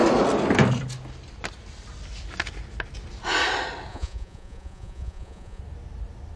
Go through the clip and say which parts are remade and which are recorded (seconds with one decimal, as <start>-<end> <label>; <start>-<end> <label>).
0.0-3.9 recorded; 3.9-5.6 remade; 5.6-6.4 recorded